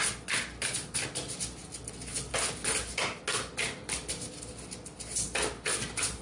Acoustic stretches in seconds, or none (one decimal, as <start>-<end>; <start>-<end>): 0.0-6.2